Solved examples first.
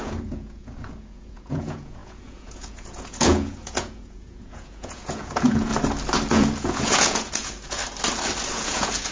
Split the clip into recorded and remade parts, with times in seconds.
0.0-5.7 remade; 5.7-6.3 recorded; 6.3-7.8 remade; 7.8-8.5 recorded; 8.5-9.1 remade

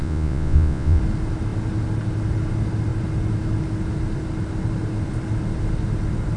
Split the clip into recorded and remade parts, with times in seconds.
0.0-1.0 remade; 1.0-6.4 recorded